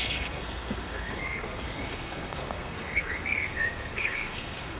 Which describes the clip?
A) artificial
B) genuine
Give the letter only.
A